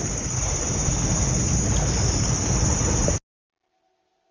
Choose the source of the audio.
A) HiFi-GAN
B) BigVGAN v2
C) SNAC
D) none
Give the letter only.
D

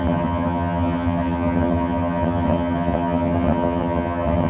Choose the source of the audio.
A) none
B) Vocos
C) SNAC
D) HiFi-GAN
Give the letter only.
D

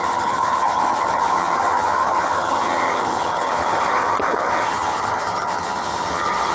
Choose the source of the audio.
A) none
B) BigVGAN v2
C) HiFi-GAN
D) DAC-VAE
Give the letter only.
C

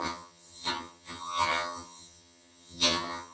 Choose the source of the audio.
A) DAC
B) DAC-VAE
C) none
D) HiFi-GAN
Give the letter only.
D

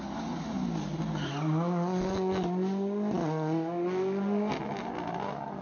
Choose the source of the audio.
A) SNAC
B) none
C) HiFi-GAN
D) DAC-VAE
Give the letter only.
B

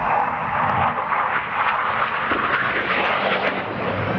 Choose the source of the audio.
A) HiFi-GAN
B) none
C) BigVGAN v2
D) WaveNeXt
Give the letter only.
B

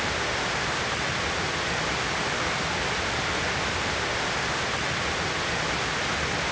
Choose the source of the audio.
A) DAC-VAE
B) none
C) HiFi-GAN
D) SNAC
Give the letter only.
B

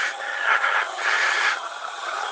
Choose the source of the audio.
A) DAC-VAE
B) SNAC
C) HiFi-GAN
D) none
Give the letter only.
C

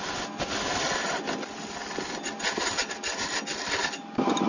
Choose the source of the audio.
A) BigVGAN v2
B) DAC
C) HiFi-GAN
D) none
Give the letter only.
D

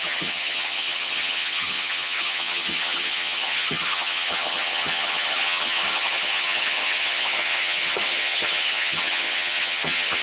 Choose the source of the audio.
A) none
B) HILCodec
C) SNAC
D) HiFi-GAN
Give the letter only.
D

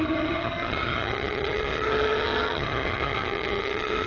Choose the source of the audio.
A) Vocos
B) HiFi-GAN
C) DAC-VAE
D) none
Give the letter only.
B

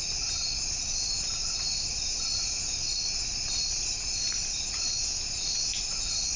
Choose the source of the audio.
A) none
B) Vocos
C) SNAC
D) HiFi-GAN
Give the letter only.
A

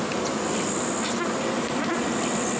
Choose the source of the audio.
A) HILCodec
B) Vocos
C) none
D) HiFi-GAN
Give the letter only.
C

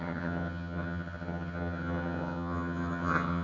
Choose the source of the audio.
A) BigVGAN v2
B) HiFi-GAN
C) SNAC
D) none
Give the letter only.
B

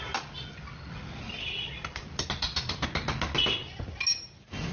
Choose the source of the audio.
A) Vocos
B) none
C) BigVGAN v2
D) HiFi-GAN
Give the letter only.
B